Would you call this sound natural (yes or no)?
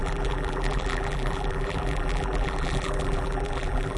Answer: no